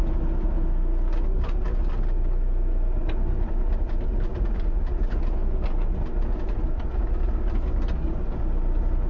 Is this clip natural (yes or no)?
yes